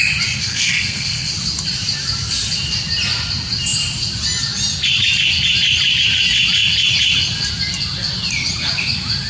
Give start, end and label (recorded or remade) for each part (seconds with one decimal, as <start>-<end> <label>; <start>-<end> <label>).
0.0-0.4 recorded; 0.4-1.3 remade; 1.3-9.3 recorded